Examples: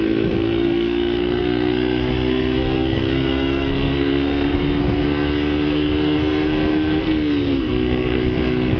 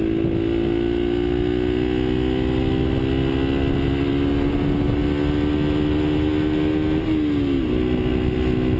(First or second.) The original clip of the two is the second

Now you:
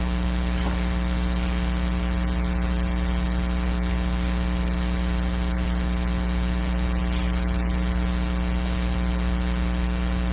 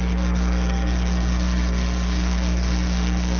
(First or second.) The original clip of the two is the first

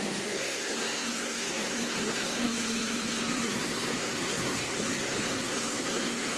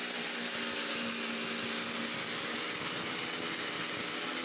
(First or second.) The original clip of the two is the second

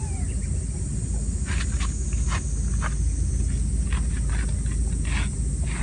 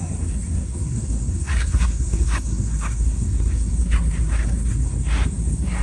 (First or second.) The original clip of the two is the first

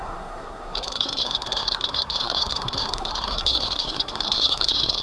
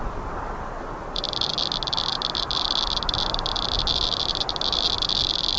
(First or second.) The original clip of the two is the second